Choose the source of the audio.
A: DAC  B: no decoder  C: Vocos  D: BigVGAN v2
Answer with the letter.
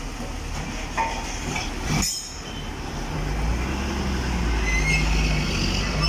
B